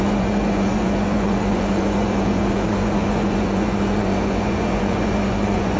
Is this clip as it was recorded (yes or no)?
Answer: no